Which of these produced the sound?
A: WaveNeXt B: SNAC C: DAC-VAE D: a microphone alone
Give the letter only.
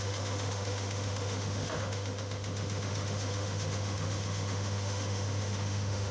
C